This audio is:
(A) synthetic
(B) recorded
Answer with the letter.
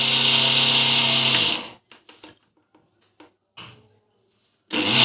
B